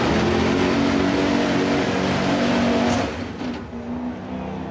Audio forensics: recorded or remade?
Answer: recorded